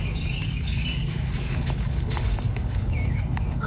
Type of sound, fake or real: fake